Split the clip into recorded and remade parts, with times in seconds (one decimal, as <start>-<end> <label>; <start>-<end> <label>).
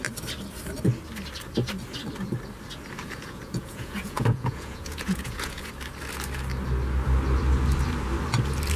0.0-3.0 recorded; 3.0-5.7 remade; 5.7-8.8 recorded